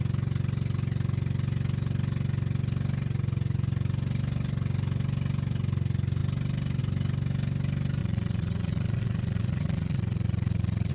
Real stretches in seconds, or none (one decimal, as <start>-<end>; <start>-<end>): 0.0-8.0